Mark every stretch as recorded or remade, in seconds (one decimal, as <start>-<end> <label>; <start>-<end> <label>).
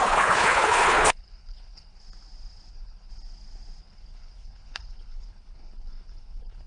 0.0-2.0 remade; 2.0-2.7 recorded; 2.7-3.1 remade; 3.1-3.8 recorded; 3.8-6.7 remade